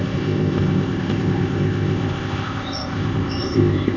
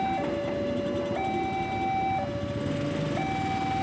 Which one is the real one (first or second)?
second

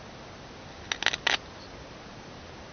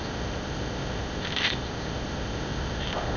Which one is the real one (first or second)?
first